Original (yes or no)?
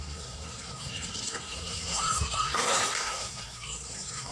no